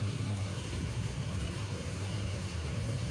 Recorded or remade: remade